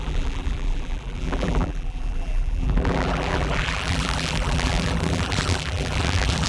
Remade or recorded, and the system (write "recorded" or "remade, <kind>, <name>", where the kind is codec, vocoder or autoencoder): remade, vocoder, BigVGAN v2